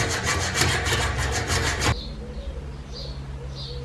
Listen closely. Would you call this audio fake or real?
real